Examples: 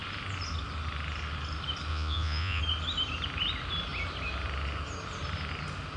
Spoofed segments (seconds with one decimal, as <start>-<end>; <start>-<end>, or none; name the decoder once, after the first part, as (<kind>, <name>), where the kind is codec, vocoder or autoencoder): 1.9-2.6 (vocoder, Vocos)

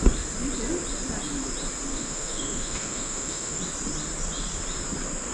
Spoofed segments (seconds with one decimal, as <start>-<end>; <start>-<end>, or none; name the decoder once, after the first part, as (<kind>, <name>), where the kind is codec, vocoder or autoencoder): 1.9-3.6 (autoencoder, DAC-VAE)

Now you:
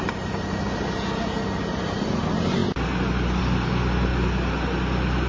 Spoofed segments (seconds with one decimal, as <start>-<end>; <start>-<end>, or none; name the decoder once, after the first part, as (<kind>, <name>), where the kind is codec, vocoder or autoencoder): none

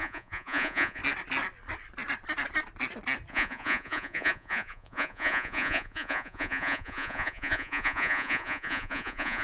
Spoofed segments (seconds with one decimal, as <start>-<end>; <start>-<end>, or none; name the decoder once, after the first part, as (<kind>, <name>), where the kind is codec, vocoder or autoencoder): 0.0-1.0 (vocoder, Vocos); 3.3-9.4